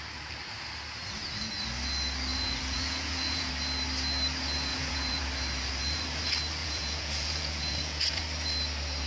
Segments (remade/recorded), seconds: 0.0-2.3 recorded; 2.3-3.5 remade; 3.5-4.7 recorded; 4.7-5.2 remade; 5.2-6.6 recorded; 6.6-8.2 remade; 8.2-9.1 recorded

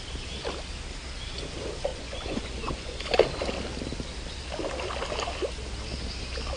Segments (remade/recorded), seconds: 0.0-1.9 recorded; 1.9-3.0 remade; 3.0-6.6 recorded

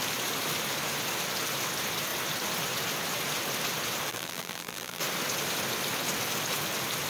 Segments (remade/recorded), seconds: 0.0-4.1 recorded; 4.1-5.0 remade; 5.0-7.1 recorded

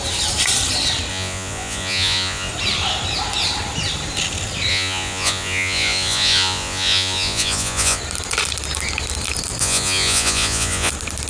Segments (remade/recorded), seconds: 0.0-1.1 recorded; 1.1-2.5 remade; 2.5-4.7 recorded; 4.7-8.0 remade; 8.0-9.6 recorded; 9.6-10.9 remade; 10.9-11.3 recorded

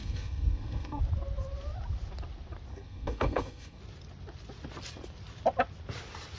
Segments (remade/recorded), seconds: 0.0-1.0 remade; 1.0-2.7 recorded; 2.7-3.8 remade; 3.8-6.4 recorded

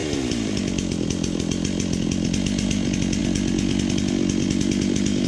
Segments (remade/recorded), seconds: 0.0-5.3 recorded

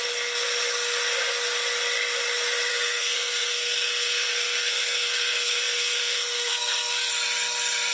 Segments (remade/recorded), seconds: 0.0-2.7 recorded; 2.7-7.1 remade; 7.1-7.9 recorded